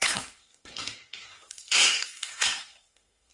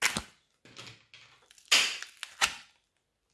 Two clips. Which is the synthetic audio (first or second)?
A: first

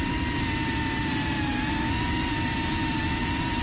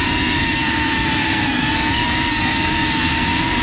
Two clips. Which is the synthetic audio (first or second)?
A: second